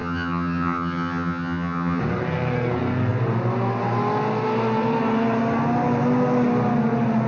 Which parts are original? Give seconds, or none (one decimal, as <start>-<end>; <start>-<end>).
2.0-7.3